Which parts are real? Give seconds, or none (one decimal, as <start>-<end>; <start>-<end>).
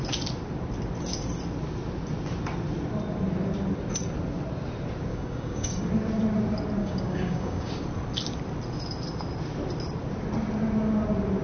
0.0-5.1; 5.9-6.8; 7.7-11.4